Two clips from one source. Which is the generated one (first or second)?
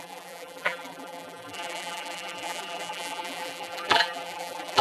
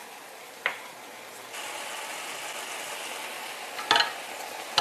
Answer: first